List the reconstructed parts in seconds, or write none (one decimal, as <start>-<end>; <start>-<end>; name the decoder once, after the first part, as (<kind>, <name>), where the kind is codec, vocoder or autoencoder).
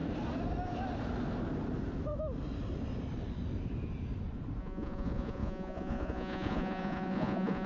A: 4.6-7.7 (vocoder, Vocos)